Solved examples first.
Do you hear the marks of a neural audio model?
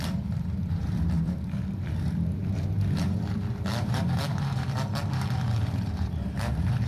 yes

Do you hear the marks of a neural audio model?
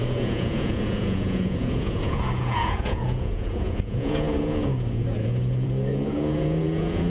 yes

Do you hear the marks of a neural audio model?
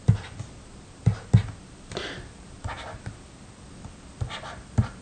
no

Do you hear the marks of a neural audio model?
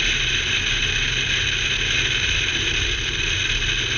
no